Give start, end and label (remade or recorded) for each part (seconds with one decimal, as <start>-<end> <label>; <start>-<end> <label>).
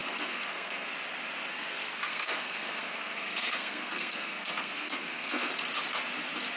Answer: 0.0-0.9 remade; 0.9-1.5 recorded; 1.5-5.5 remade; 5.5-6.6 recorded